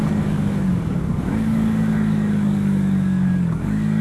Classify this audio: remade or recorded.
remade